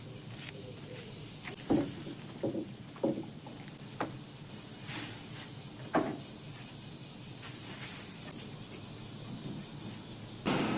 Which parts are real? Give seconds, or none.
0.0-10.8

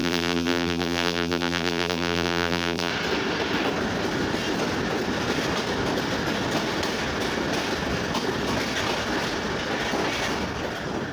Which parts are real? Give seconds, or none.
2.9-11.1

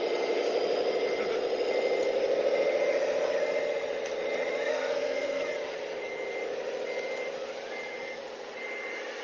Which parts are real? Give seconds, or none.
0.0-4.7; 5.4-9.2

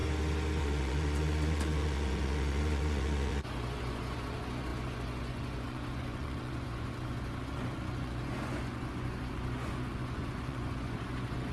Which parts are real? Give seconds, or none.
0.0-0.6

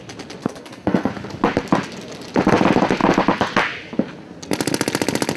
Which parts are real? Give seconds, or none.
0.0-0.4; 1.1-5.4

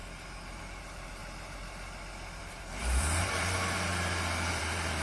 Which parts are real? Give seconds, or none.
0.0-0.6; 1.2-2.4; 3.9-4.5

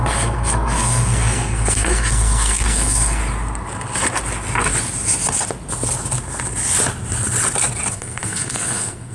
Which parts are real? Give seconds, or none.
3.2-7.9

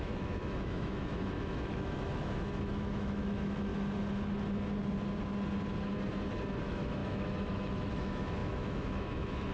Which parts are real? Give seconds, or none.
3.7-6.6